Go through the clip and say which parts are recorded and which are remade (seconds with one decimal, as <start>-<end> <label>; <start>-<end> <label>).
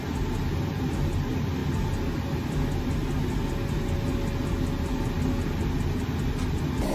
0.0-6.9 recorded